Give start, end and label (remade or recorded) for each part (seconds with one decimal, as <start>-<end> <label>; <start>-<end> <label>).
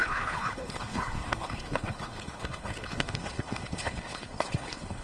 0.0-5.0 remade